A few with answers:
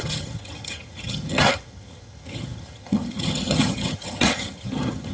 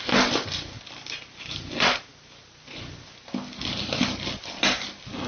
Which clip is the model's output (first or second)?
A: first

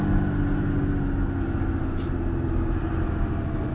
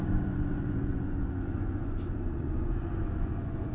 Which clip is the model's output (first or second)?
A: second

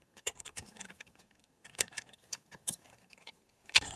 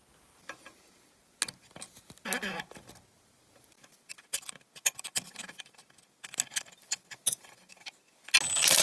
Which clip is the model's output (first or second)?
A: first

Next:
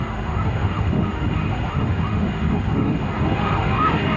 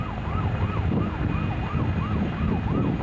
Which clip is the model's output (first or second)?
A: first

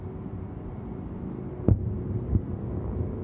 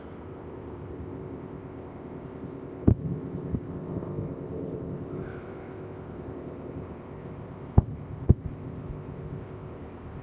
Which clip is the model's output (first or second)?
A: second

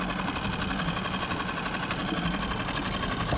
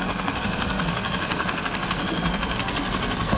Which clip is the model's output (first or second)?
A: second